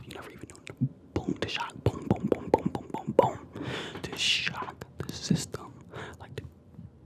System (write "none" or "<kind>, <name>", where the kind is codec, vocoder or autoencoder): none